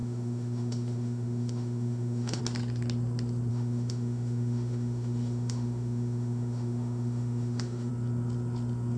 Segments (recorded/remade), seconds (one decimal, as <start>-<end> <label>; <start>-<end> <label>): 0.0-2.4 remade; 2.4-3.5 recorded; 3.5-7.9 remade; 7.9-9.0 recorded